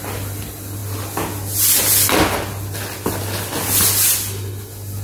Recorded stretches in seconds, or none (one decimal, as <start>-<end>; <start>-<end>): 0.0-5.0